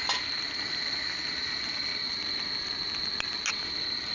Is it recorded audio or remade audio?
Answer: recorded